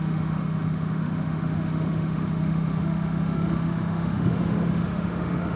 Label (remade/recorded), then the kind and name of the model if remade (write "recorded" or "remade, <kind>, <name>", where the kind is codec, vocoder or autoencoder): remade, autoencoder, DAC-VAE